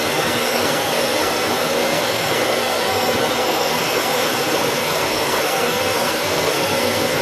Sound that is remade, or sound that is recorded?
remade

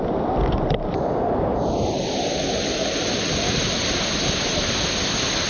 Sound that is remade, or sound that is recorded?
recorded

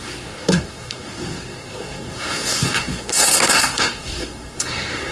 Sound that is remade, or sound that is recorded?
remade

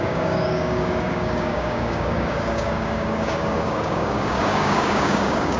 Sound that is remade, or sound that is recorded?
remade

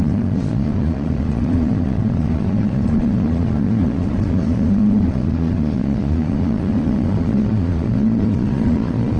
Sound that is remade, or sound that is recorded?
remade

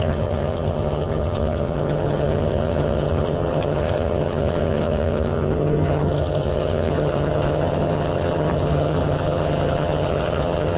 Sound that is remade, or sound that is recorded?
remade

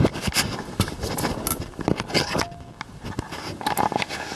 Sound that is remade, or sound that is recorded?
recorded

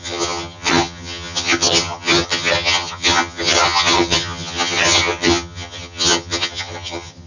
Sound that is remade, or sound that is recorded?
remade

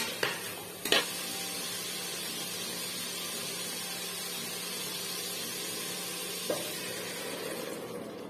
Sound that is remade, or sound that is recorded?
recorded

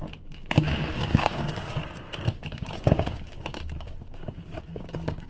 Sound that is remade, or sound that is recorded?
remade